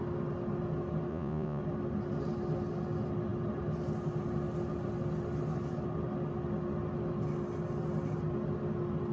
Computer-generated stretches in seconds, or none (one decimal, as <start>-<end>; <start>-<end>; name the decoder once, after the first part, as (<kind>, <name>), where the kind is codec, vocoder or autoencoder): 1.1-1.6 (vocoder, Vocos)